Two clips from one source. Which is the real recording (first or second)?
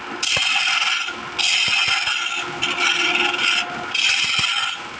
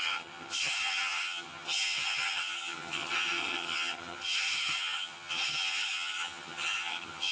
first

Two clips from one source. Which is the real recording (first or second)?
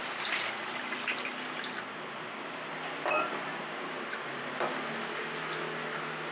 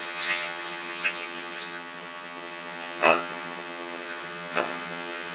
first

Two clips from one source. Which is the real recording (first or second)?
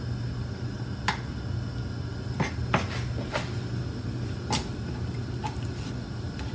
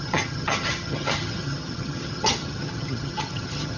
first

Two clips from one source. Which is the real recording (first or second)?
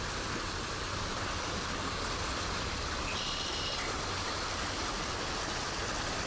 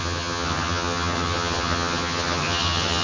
first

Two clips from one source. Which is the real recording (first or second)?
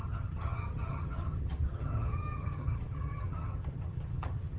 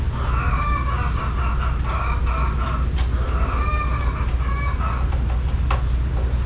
second